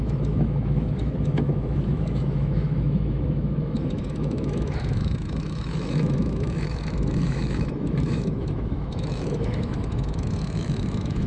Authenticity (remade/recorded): remade